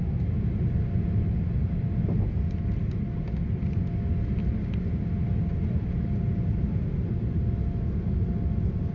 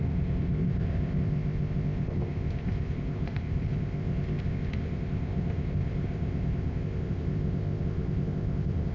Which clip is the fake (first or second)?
second